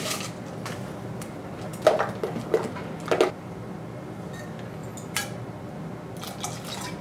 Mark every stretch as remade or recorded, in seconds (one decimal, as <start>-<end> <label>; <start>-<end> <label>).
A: 0.0-7.0 recorded